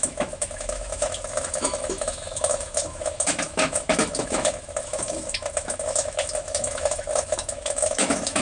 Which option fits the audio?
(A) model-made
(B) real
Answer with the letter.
A